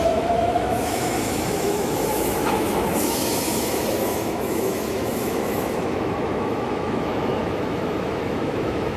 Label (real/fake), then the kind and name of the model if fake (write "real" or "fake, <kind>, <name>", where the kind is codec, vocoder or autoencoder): fake, autoencoder, DAC-VAE